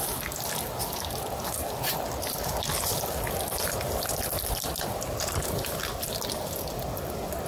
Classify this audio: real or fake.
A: real